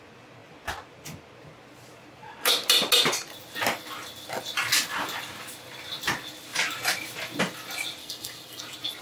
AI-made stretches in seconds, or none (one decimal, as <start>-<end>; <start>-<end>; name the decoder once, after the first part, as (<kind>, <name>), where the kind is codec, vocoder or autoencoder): 8.0-8.6 (codec, SNAC)

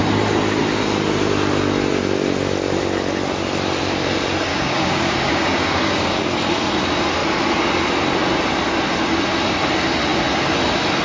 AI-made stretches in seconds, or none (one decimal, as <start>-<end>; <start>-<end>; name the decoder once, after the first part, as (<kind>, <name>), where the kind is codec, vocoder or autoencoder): 4.5-6.2 (codec, DAC)

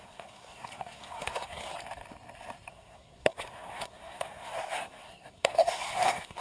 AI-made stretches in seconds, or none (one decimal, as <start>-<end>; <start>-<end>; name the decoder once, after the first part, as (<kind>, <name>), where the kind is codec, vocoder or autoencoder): 0.0-1.7 (codec, SNAC); 2.7-6.4

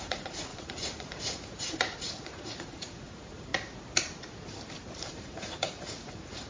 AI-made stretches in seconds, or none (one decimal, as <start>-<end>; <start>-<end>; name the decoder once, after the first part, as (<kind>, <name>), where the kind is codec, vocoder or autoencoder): 0.0-3.5 (vocoder, Vocos); 5.0-6.5

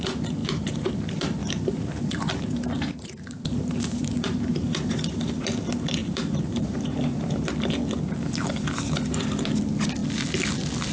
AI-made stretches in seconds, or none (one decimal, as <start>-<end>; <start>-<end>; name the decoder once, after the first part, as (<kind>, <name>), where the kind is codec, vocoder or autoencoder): 0.4-0.9 (vocoder, BigVGAN v2); 1.4-5.4; 6.0-7.5